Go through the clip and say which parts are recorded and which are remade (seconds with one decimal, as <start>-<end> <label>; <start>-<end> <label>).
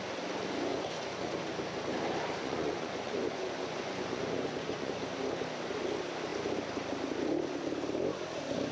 0.0-0.7 recorded; 0.7-1.4 remade; 1.4-2.4 recorded; 2.4-5.0 remade; 5.0-8.7 recorded